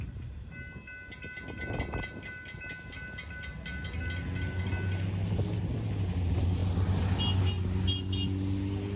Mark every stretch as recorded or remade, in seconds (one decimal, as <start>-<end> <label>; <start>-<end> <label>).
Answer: 0.0-9.0 recorded